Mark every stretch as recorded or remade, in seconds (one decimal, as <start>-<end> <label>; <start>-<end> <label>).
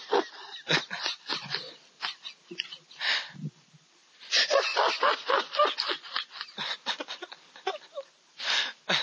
0.0-9.0 recorded